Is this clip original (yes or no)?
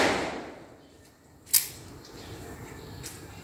yes